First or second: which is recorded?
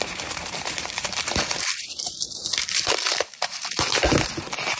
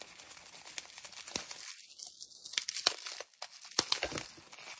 second